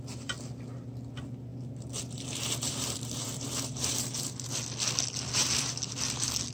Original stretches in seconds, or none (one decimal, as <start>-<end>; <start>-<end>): 0.0-1.5; 4.4-5.4; 5.9-6.5